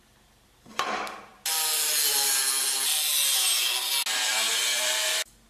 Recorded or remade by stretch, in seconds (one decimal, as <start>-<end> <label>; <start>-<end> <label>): 0.0-1.3 remade; 1.3-4.5 recorded; 4.5-5.5 remade